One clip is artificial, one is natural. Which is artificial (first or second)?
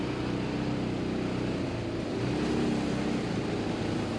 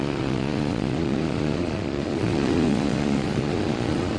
second